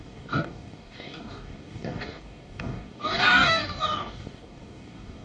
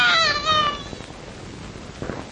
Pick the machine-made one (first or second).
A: first